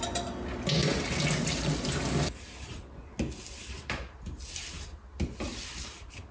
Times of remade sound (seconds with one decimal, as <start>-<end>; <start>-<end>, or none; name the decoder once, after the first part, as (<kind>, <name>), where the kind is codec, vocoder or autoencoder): none